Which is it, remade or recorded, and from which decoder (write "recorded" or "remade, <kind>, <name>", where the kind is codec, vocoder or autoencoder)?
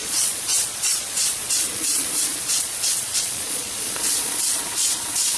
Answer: remade, vocoder, Vocos